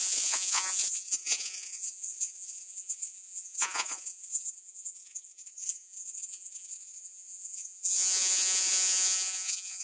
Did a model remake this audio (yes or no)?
yes